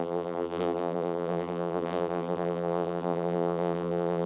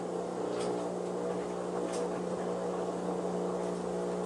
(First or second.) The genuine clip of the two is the second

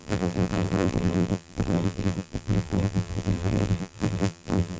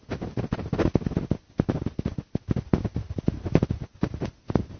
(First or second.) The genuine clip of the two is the second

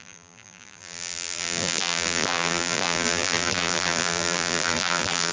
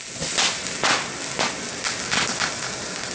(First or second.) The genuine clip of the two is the second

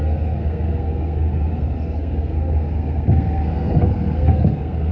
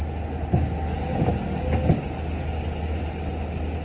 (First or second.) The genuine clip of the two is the second